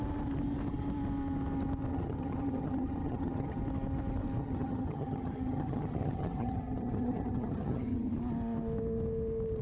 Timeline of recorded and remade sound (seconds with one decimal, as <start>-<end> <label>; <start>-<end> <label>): 0.0-1.9 recorded; 1.9-3.6 remade; 3.6-4.4 recorded; 4.4-8.1 remade; 8.1-9.6 recorded